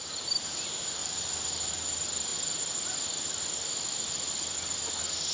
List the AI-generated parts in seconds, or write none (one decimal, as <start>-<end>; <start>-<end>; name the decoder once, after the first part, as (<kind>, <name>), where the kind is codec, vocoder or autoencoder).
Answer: 1.0-1.7 (vocoder, BigVGAN v2)